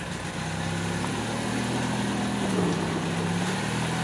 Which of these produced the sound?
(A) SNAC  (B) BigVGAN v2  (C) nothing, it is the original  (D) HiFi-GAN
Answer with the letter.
C